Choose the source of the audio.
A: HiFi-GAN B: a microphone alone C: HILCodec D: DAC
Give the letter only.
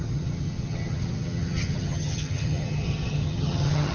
A